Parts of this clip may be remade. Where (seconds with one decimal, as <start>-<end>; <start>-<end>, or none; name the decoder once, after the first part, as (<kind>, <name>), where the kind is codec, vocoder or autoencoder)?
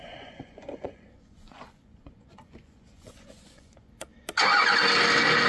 0.0-4.1 (vocoder, Vocos)